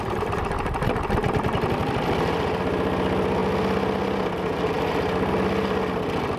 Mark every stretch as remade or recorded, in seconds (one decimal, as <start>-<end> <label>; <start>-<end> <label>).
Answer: 0.0-1.8 recorded; 1.8-2.6 remade; 2.6-6.4 recorded